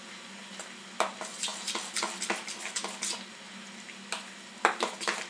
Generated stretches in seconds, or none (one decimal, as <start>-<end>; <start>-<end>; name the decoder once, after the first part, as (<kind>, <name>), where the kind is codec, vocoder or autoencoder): none